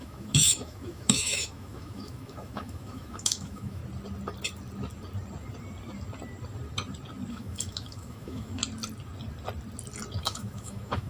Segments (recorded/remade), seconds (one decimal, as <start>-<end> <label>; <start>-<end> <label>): 0.0-3.8 remade; 3.8-7.3 recorded; 7.3-8.6 remade; 8.6-10.2 recorded; 10.2-11.1 remade